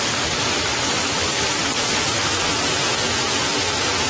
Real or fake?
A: real